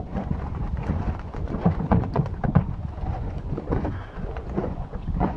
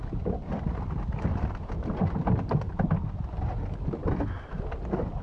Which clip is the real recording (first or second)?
second